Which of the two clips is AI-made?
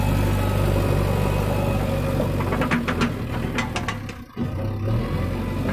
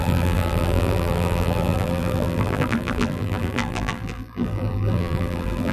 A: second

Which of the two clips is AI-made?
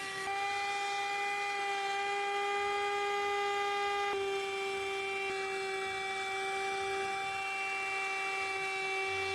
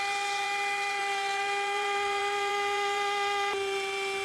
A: second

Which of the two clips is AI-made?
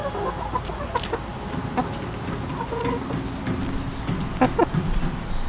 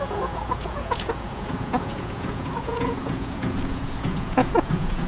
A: second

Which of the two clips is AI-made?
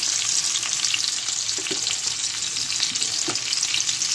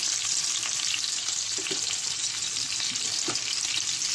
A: second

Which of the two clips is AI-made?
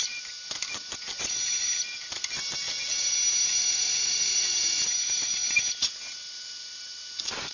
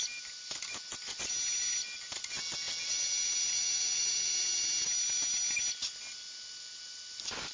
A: first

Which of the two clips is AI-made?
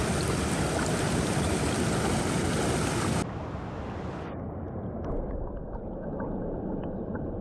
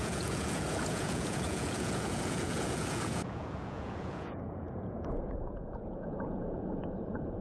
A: second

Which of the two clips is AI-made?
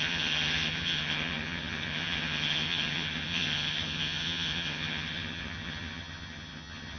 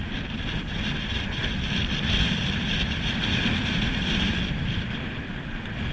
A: first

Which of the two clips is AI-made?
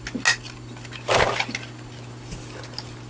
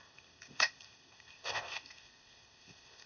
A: second